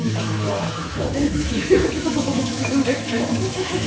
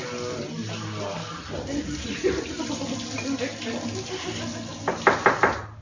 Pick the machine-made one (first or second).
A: first